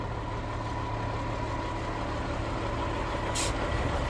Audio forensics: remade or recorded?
recorded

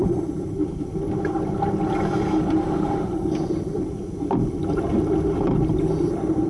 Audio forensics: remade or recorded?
recorded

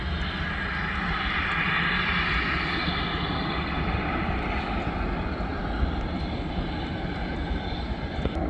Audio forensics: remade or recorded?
recorded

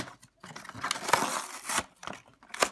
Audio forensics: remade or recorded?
recorded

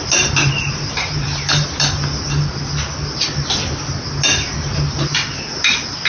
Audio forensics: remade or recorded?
recorded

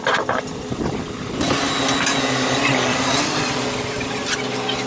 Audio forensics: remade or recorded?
recorded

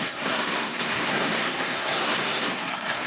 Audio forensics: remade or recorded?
remade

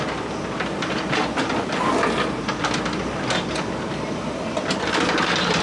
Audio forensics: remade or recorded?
recorded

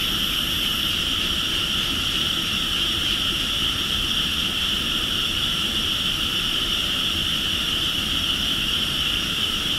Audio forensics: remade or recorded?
remade